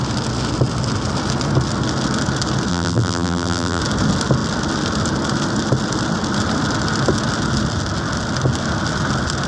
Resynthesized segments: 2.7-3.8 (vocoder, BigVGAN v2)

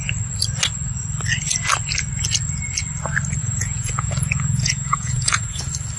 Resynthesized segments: 3.4-5.6 (vocoder, Vocos)

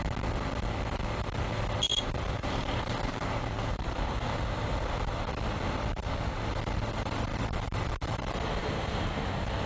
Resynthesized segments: 1.9-5.1 (vocoder, BigVGAN v2); 8.6-9.1

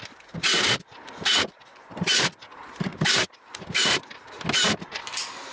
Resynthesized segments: none

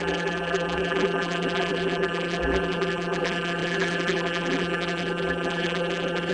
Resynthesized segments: 0.0-6.3 (vocoder, BigVGAN v2)

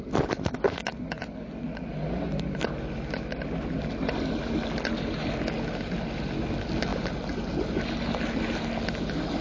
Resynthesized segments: none